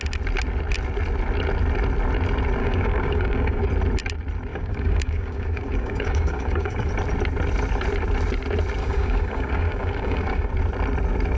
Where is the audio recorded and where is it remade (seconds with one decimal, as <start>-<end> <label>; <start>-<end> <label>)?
0.0-2.6 recorded; 2.6-3.7 remade; 3.7-4.5 recorded; 4.5-6.9 remade; 6.9-8.8 recorded; 8.8-10.5 remade; 10.5-11.4 recorded